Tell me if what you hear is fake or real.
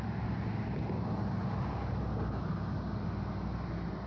real